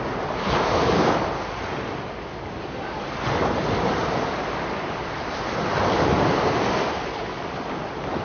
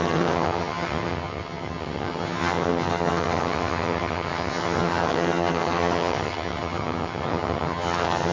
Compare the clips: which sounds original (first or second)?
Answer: first